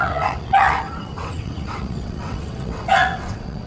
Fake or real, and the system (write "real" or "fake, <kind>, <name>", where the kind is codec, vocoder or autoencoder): fake, vocoder, WaveNeXt